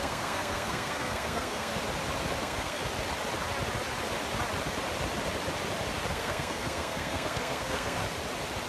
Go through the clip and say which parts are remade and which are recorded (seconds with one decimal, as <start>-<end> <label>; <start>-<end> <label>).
0.0-1.7 remade; 1.7-2.4 recorded; 2.4-2.8 remade; 2.8-6.1 recorded; 6.1-8.0 remade; 8.0-8.7 recorded